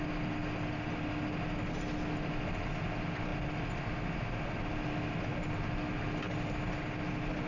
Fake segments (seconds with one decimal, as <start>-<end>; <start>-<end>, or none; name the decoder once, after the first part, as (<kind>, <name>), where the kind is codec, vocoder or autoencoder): none